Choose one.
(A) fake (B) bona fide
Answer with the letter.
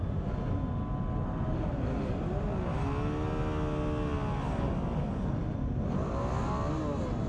B